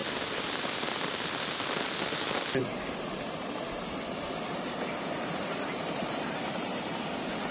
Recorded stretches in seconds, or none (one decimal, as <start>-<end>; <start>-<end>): 1.0-2.6; 7.1-7.5